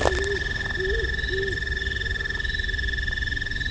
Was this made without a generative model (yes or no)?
yes